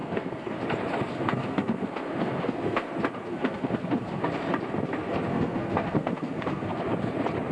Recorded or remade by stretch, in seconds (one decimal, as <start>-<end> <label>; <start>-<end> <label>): 0.0-0.6 remade; 0.6-1.1 recorded; 1.1-2.9 remade; 2.9-3.3 recorded; 3.3-4.2 remade; 4.2-5.3 recorded; 5.3-6.8 remade; 6.8-7.5 recorded